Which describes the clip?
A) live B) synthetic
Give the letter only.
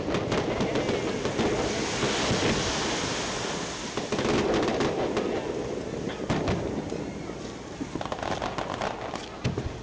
A